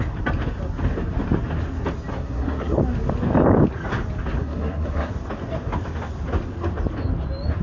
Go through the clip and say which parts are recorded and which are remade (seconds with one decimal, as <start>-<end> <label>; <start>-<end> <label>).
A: 0.0-2.1 recorded; 2.1-2.8 remade; 2.8-4.4 recorded; 4.4-5.1 remade; 5.1-7.6 recorded